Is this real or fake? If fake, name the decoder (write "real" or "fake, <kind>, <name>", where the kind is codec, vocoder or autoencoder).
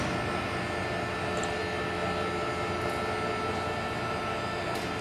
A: real